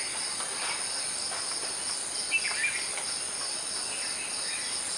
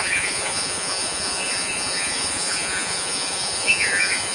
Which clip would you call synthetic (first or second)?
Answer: second